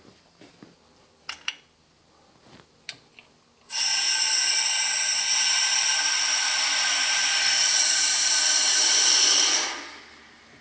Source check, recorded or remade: recorded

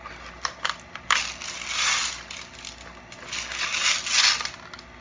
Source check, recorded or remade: recorded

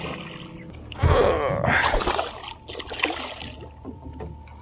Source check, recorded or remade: recorded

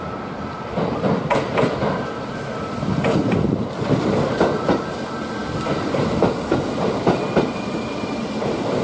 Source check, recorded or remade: recorded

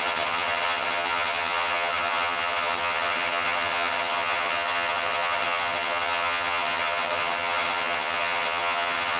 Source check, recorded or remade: remade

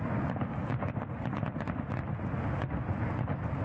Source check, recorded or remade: recorded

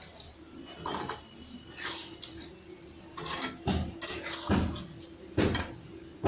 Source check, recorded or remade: recorded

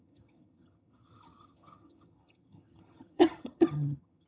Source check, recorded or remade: remade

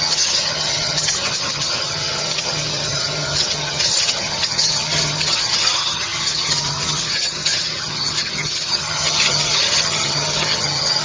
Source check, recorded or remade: remade